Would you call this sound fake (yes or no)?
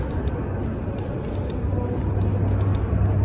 no